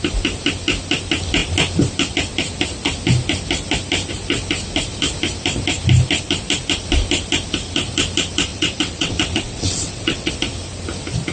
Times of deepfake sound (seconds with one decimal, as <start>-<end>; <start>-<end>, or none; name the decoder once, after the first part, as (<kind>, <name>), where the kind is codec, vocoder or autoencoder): 8.5-10.3 (vocoder, WaveNeXt)